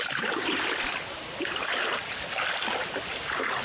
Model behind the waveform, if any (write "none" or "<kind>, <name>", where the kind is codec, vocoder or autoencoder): none